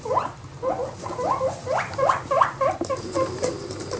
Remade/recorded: recorded